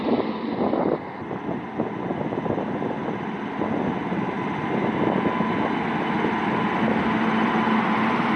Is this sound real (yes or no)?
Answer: yes